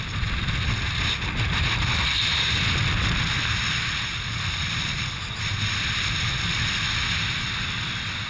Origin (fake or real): real